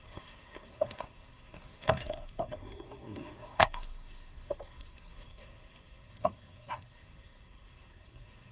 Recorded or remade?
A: remade